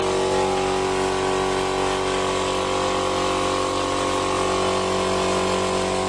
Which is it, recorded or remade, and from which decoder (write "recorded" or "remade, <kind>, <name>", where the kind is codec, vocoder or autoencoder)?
recorded